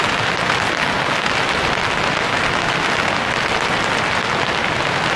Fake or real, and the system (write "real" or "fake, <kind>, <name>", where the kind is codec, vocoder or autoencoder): real